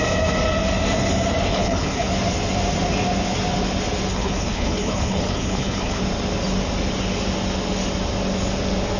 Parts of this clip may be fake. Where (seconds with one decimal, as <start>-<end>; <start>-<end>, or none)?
1.5-2.1; 4.1-6.0